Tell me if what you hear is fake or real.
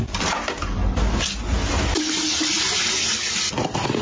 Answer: real